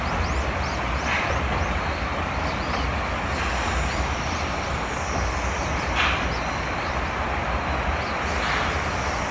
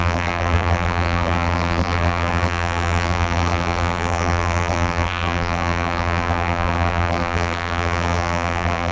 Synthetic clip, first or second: second